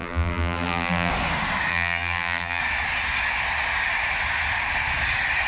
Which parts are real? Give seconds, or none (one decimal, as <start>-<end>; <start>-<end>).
1.1-1.7; 2.6-5.5

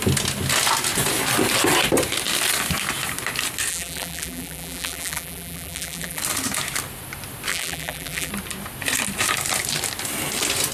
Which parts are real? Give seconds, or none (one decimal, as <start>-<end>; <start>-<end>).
0.0-3.7; 6.2-7.5; 8.3-10.7

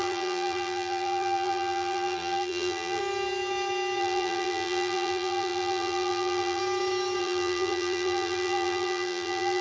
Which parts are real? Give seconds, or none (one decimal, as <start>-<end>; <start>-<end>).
3.0-4.0; 6.6-7.2

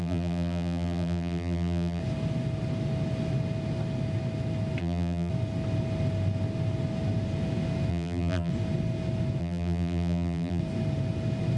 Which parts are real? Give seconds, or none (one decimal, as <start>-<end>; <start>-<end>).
2.0-4.8; 5.3-7.9; 8.5-9.4; 10.6-11.6

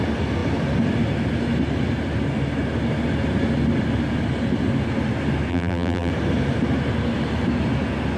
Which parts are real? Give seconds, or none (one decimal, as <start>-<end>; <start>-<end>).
0.0-5.5; 6.1-8.2